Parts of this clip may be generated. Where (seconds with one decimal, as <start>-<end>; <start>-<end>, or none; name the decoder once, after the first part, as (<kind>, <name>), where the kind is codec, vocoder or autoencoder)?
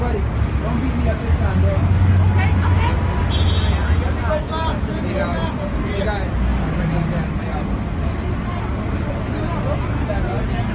none